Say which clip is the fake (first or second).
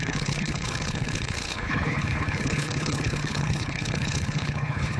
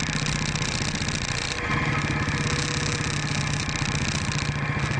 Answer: first